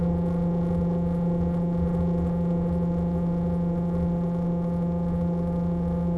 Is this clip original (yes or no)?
no